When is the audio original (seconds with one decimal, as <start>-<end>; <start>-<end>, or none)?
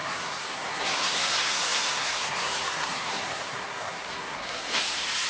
none